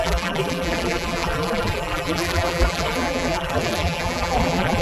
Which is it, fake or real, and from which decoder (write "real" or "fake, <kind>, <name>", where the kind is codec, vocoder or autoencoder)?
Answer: fake, vocoder, BigVGAN v2